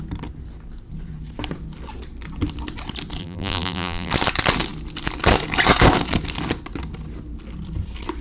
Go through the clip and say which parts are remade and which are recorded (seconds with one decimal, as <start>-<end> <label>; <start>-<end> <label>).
0.0-3.2 recorded; 3.2-4.1 remade; 4.1-8.2 recorded